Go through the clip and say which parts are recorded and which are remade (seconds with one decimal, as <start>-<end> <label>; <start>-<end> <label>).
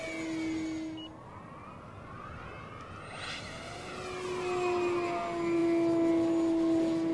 0.0-7.1 recorded